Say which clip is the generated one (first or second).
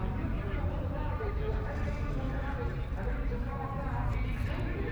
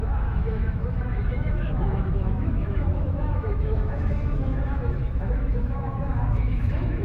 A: second